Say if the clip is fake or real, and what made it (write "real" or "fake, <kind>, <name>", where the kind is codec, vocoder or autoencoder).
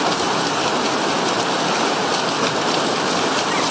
real